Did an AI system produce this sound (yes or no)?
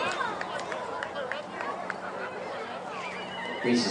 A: no